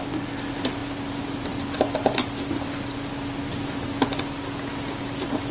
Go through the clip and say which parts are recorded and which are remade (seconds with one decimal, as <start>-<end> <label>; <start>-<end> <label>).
0.0-0.8 recorded; 0.8-3.1 remade; 3.1-5.5 recorded